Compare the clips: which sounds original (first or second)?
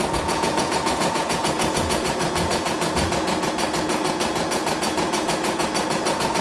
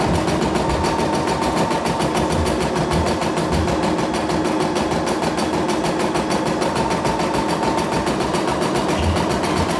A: second